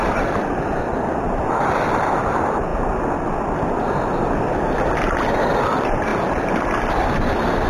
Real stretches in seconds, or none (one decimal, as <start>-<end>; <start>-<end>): 0.0-7.7

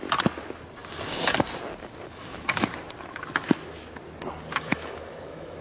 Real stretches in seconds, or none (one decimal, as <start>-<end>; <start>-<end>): 0.0-4.7

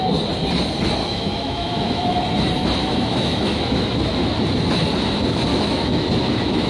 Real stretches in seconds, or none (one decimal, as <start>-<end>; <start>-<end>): 0.0-1.0; 2.2-2.8; 4.3-5.5

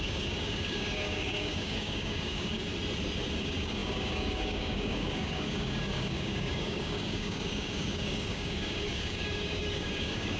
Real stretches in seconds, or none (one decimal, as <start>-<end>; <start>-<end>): 2.7-3.4

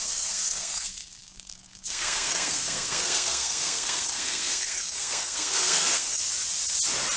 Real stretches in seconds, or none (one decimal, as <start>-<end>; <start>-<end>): 6.2-7.2

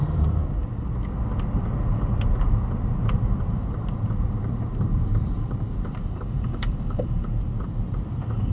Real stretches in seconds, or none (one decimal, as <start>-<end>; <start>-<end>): 0.4-3.4